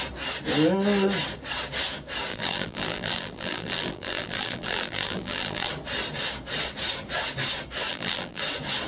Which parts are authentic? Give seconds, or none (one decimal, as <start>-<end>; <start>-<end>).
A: 0.0-2.3; 5.7-7.9; 8.4-8.9